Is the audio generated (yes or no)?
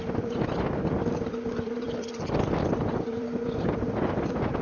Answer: yes